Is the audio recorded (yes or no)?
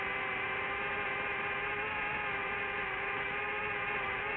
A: yes